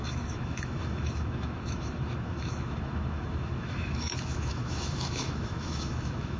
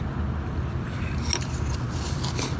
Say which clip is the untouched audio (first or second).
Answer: second